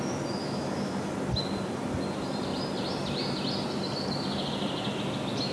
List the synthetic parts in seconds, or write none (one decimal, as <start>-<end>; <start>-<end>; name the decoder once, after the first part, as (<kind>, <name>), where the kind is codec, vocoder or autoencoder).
0.4-1.1 (autoencoder, DAC-VAE)